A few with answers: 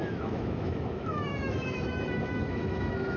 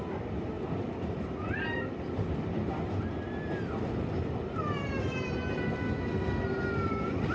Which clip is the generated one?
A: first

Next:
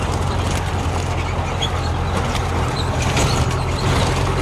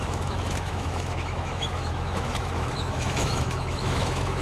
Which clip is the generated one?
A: second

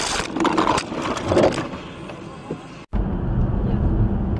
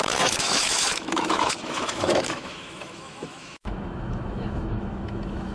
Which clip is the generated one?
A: second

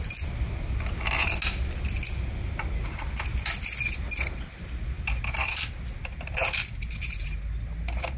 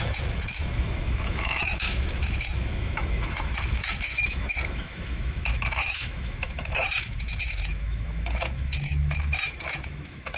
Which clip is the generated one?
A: second